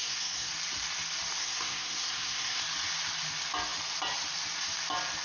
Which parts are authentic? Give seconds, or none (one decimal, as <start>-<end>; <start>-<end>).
0.5-1.4; 2.6-5.2